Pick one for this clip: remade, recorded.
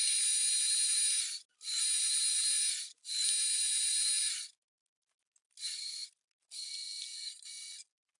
recorded